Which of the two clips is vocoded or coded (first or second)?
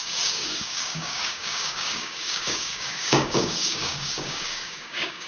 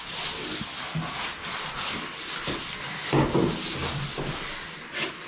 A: first